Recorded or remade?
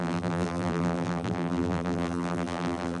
remade